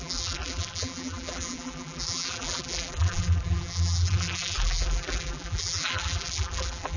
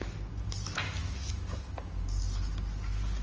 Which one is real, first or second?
second